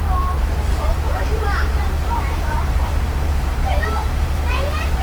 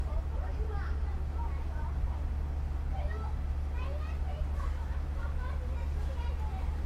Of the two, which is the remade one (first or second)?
first